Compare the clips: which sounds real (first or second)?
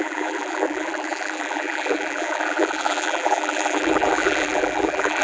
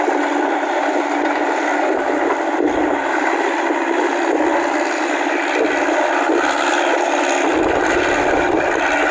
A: second